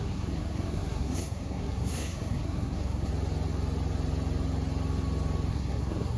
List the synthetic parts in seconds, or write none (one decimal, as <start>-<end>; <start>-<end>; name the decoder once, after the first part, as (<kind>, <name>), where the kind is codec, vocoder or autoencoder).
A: 0.0-3.1 (codec, SNAC); 5.5-6.2